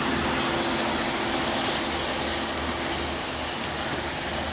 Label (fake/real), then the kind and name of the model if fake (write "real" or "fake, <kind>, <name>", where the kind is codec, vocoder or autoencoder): real